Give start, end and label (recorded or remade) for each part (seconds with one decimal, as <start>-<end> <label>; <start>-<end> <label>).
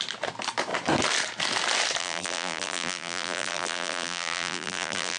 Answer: 0.0-2.0 recorded; 2.0-5.2 remade